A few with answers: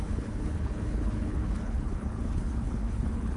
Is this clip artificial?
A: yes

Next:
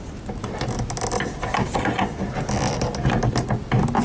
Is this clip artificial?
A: no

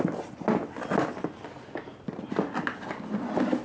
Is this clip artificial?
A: no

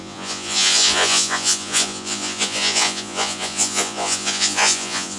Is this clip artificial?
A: yes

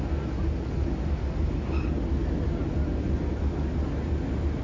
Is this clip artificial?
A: no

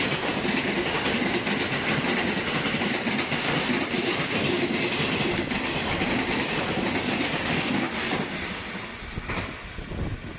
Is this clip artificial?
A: no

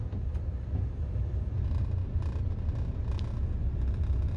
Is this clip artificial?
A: no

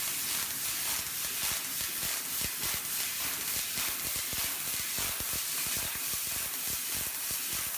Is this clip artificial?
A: no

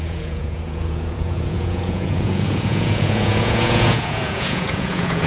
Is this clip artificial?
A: yes